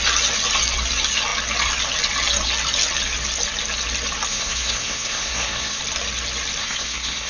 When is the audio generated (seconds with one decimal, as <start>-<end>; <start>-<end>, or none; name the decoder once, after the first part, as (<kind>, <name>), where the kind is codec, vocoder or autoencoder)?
4.3-5.8 (codec, SNAC); 6.6-7.3